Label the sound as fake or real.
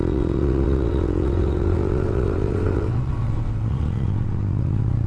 fake